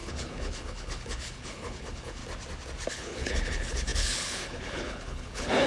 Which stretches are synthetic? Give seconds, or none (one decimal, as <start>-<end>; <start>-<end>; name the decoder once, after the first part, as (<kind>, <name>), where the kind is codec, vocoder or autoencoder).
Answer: 0.0-2.2 (codec, HILCodec); 2.9-5.7